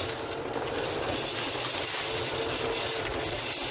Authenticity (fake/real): real